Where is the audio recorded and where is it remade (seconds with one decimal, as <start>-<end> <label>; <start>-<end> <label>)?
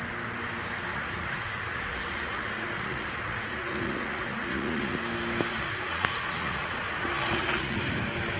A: 0.0-0.9 recorded; 0.9-5.0 remade; 5.0-5.5 recorded; 5.5-7.8 remade; 7.8-8.4 recorded